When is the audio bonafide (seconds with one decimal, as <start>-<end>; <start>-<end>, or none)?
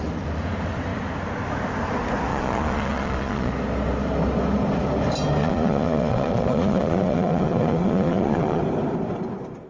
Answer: 0.0-2.3; 3.5-5.4; 8.6-9.7